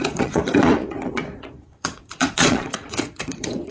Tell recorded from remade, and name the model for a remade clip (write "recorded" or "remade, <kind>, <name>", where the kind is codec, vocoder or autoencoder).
remade, vocoder, Vocos